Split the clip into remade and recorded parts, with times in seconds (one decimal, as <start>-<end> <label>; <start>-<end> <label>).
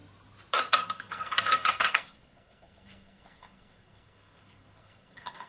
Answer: 0.0-0.7 recorded; 0.7-5.5 remade